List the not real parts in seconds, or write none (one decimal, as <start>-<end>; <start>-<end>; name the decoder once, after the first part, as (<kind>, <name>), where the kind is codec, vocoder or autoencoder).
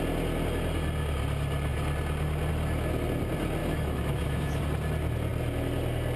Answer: 3.6-4.6 (autoencoder, DAC-VAE)